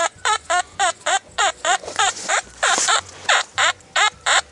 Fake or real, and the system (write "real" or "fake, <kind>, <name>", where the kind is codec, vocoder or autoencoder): fake, vocoder, Vocos